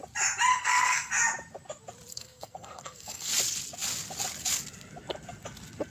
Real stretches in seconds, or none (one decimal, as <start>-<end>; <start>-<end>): 0.0-0.5; 1.1-2.1; 3.3-5.9